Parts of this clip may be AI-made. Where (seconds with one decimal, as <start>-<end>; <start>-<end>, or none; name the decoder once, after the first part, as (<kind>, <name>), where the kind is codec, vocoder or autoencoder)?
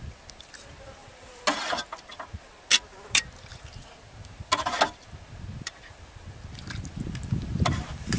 none